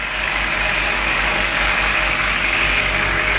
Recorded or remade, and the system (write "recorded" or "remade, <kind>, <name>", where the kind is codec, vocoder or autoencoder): remade, codec, DAC